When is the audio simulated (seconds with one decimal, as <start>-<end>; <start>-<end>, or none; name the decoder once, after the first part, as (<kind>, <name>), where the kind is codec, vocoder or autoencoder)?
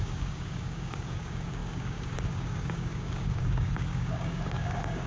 0.0-5.1 (codec, DAC)